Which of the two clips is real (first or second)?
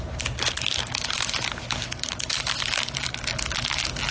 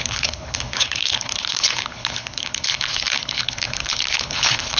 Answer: first